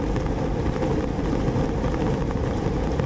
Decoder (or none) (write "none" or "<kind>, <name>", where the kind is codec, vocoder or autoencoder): none